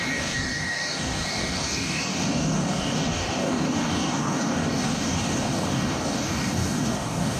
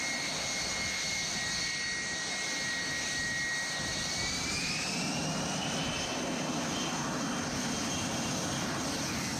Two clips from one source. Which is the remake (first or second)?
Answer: first